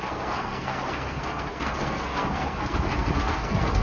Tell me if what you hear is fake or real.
fake